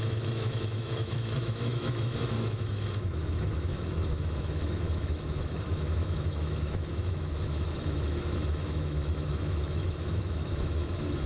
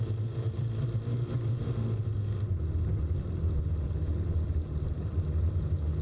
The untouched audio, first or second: second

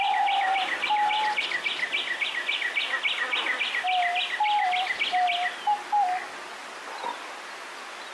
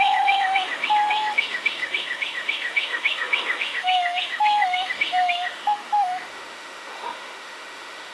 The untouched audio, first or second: first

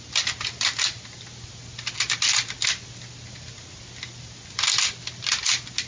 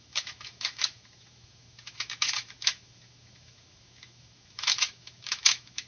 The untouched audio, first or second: first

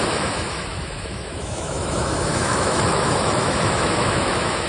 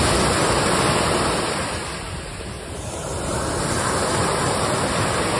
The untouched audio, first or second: second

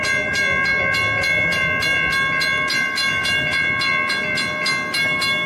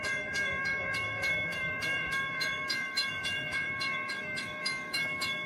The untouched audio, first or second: first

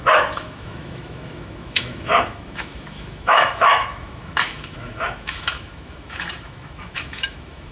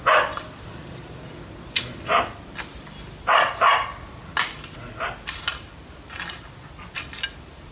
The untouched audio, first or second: second